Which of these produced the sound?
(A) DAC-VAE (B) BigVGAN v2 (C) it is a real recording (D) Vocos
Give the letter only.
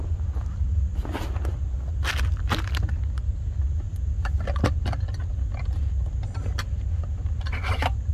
C